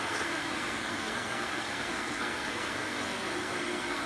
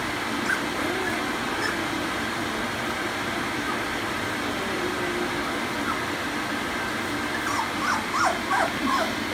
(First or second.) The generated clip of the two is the first